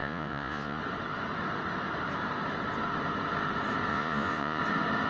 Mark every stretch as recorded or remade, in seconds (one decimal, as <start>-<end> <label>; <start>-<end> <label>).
0.0-0.8 remade; 0.8-3.9 recorded; 3.9-4.6 remade; 4.6-5.1 recorded